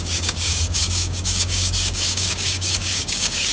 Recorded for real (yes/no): no